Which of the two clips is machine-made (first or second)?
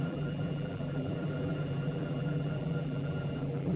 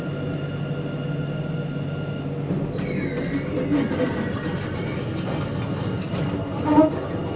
first